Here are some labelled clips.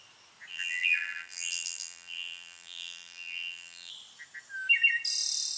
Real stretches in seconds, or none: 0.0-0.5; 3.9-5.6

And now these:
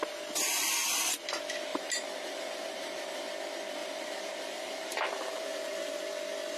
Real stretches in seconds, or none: 0.0-1.7; 3.2-3.8; 6.0-6.6